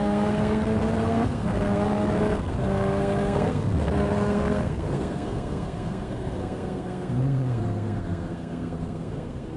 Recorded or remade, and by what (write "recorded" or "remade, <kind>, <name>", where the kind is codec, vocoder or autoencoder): remade, codec, SNAC